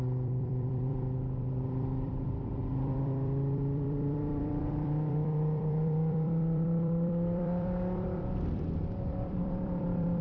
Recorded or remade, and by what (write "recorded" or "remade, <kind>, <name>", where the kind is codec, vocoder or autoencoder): remade, vocoder, BigVGAN v2